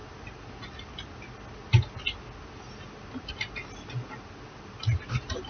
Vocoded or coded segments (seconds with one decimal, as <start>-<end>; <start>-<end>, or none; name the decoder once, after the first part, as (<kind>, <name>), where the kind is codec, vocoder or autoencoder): none